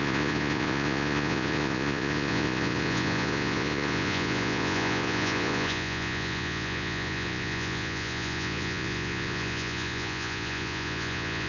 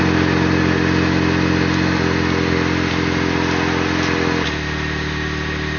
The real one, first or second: second